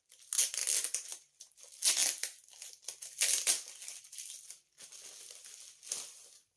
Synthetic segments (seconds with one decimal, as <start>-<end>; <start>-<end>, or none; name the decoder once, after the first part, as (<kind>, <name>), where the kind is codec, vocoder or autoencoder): none